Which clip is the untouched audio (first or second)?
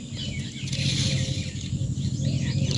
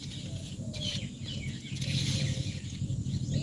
first